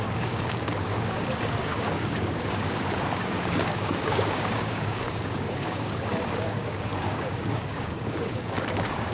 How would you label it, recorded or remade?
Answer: remade